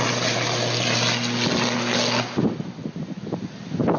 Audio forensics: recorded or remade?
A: recorded